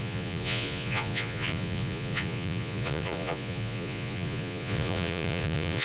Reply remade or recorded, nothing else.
remade